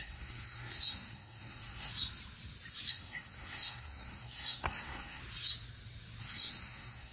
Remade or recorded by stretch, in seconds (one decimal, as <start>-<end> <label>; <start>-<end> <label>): 0.0-1.9 remade; 1.9-2.9 recorded; 2.9-5.2 remade; 5.2-6.2 recorded; 6.2-7.1 remade